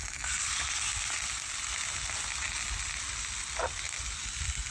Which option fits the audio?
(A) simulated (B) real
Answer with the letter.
B